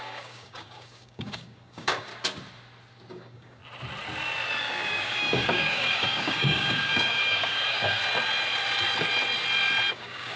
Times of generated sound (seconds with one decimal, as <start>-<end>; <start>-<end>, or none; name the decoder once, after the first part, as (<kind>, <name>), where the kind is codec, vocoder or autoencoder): 0.0-2.1 (codec, DAC); 3.1-3.6; 4.6-8.0; 9.9-10.4